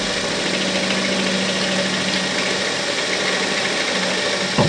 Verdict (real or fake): real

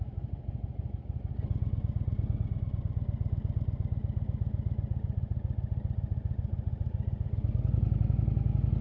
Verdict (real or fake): real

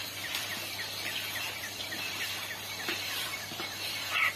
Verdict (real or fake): fake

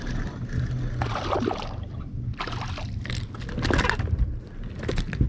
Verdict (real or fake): real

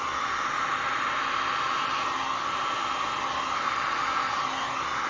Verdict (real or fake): real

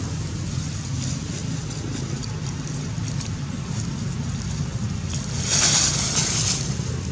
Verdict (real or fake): real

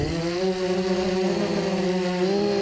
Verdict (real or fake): real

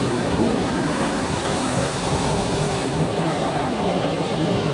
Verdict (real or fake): fake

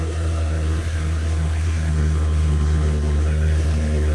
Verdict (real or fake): fake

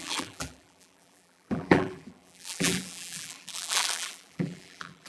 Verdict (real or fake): fake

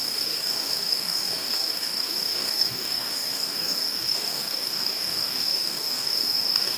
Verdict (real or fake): fake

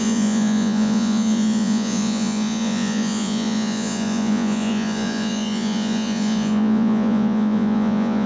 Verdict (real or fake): fake